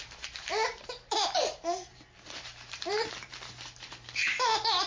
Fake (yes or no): yes